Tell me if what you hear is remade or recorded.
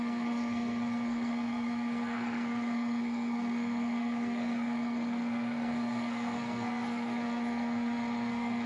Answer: remade